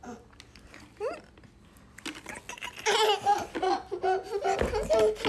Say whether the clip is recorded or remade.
recorded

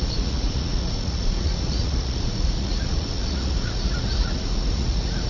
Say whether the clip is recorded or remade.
remade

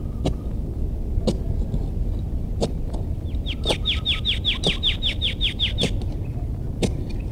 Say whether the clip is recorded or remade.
recorded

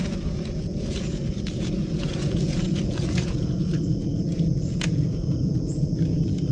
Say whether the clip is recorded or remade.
remade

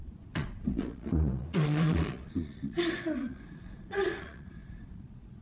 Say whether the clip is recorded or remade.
remade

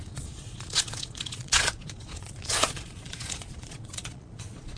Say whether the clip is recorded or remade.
remade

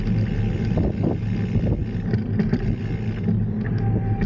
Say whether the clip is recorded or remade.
recorded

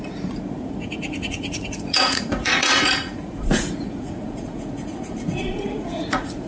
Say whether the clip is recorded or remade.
remade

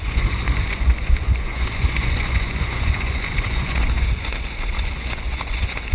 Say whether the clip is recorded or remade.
remade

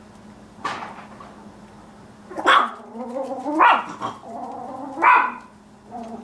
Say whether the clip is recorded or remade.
recorded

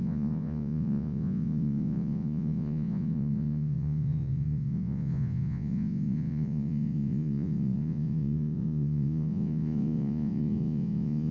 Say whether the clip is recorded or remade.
remade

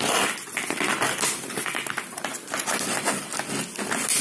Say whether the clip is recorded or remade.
recorded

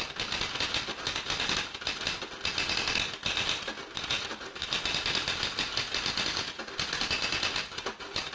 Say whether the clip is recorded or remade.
recorded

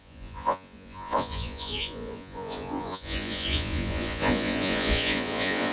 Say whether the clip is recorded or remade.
remade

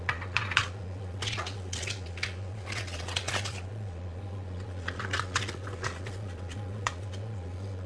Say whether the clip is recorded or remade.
remade